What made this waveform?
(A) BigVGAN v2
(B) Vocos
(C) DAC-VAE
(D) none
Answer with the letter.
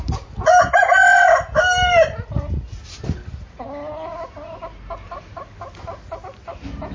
D